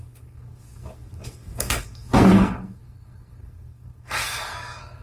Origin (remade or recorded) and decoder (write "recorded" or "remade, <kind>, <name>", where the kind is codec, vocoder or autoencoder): remade, codec, SNAC